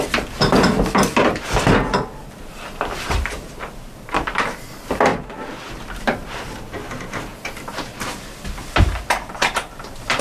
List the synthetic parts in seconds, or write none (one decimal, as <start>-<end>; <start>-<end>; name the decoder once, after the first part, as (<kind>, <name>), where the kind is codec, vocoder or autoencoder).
0.0-5.1 (vocoder, BigVGAN v2); 5.7-7.3; 8.7-10.2